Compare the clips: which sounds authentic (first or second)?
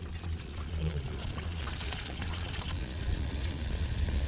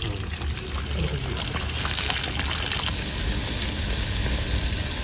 second